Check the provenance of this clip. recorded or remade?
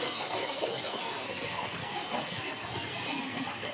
remade